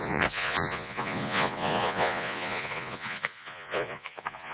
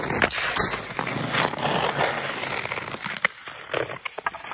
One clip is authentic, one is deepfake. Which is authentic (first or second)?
second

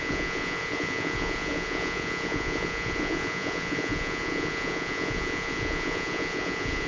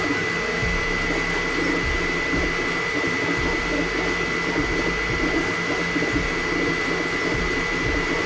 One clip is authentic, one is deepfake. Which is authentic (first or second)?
second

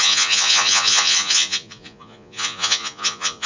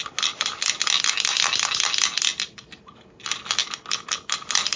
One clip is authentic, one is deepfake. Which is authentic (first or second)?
second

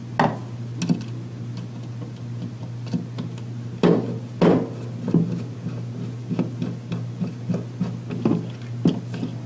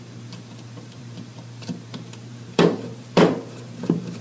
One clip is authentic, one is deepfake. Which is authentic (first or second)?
first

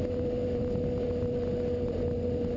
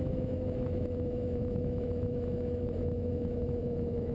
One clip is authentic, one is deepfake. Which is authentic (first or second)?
first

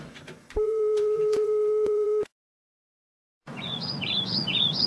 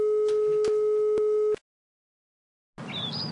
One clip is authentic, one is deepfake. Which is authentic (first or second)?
second